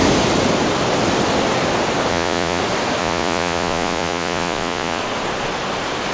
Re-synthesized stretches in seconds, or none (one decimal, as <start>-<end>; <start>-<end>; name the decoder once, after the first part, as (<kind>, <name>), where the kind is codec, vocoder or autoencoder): 2.1-2.6 (vocoder, Vocos); 3.0-5.0